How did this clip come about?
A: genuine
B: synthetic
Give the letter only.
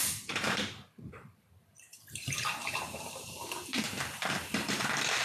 B